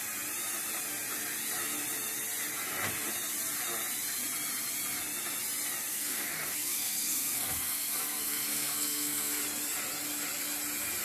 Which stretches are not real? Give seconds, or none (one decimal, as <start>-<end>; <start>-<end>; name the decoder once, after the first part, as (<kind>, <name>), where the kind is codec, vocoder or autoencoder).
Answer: 5.9-9.4 (codec, SNAC)